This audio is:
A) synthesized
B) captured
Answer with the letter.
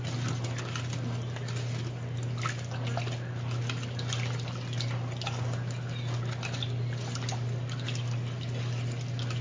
B